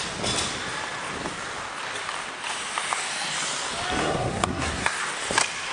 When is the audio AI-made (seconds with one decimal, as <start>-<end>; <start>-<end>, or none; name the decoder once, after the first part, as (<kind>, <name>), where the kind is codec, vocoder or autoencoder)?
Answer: 4.0-5.0 (codec, SNAC)